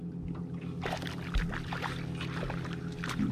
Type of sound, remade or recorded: recorded